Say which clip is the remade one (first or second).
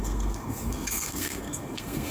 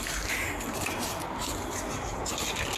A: first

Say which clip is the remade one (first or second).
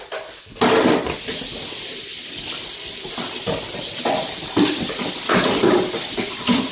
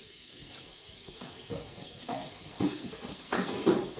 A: second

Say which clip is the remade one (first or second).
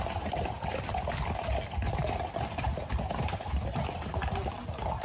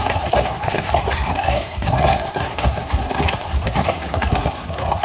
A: second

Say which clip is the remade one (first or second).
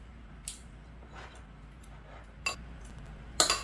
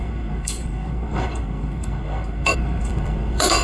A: second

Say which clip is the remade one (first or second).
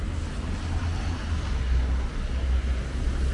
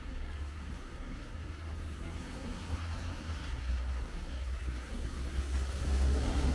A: second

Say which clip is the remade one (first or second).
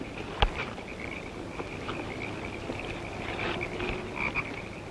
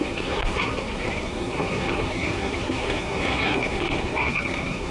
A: second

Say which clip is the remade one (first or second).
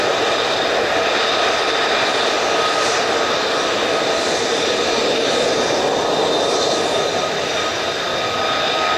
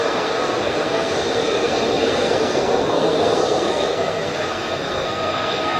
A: second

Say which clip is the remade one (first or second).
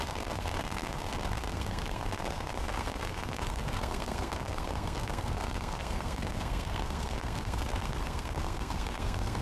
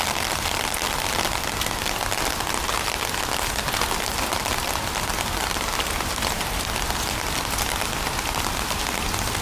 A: first